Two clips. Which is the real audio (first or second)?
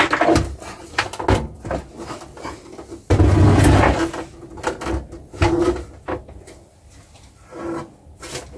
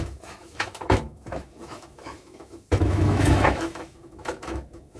first